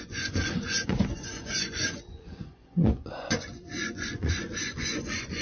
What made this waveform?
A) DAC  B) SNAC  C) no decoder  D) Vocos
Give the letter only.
D